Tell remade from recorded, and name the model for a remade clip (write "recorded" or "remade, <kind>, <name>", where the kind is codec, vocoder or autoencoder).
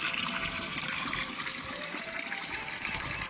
remade, vocoder, BigVGAN v2